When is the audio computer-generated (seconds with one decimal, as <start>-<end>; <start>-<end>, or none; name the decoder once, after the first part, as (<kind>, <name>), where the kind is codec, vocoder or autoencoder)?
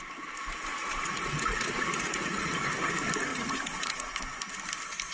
0.7-2.5 (vocoder, Vocos); 3.3-4.2